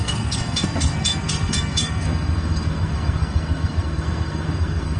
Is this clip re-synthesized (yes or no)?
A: yes